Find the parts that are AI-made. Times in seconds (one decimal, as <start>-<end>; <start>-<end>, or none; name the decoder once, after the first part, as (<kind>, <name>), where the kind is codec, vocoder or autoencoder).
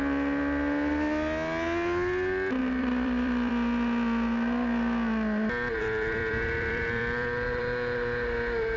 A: 2.6-3.5 (vocoder, BigVGAN v2); 5.8-7.6